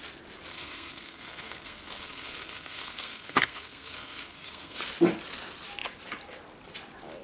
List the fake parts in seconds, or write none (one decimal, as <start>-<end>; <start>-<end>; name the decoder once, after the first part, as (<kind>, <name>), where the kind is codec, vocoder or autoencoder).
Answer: 0.5-4.8 (codec, SNAC)